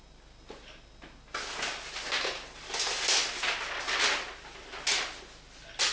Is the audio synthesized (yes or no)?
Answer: no